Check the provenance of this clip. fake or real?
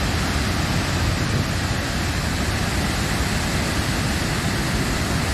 real